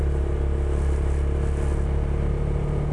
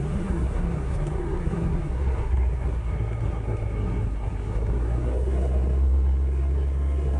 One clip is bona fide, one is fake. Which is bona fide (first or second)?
first